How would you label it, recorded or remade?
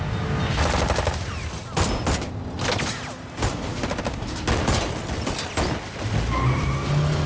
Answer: recorded